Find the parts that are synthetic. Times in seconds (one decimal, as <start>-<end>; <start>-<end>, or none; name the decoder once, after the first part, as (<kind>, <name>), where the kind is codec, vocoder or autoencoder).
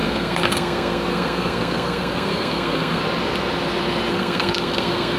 0.0-3.0 (codec, SNAC); 4.1-5.2